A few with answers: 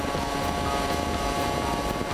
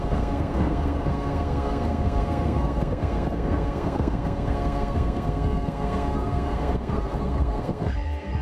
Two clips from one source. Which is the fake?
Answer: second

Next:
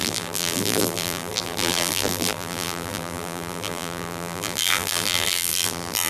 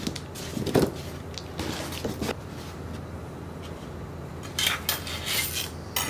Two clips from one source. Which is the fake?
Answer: first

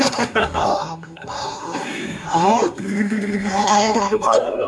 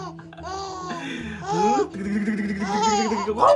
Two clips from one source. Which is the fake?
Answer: first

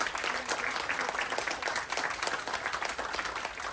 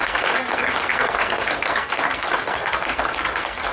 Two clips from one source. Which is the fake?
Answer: second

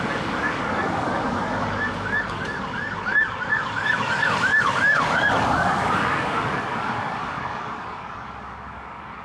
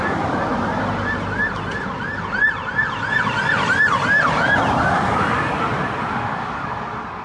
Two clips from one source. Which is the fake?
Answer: first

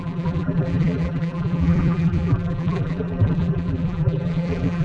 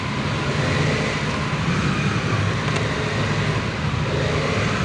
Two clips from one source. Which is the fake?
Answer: first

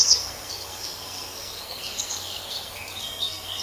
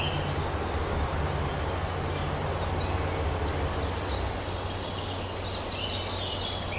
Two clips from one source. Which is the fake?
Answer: first